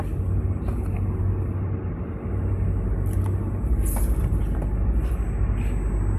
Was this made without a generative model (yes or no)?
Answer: yes